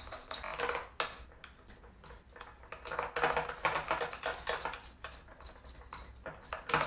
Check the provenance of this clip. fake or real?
real